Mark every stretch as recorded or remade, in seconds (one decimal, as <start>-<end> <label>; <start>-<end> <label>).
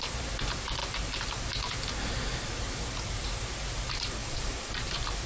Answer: 0.0-4.2 recorded; 4.2-4.7 remade; 4.7-5.3 recorded